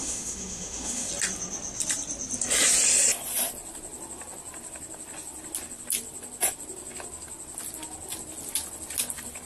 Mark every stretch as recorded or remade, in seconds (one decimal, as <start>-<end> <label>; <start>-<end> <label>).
0.0-1.1 remade; 1.1-9.5 recorded